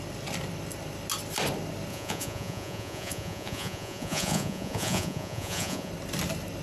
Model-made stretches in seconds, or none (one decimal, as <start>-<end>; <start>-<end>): 1.9-5.9